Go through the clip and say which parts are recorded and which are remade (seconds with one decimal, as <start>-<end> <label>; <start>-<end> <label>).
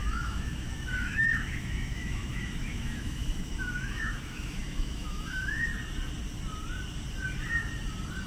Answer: 0.0-5.7 remade; 5.7-8.3 recorded